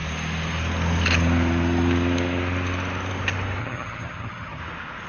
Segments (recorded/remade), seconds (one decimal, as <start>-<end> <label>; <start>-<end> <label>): 0.0-3.6 recorded; 3.6-4.6 remade; 4.6-5.1 recorded